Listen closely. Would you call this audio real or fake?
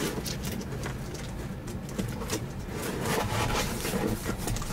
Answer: real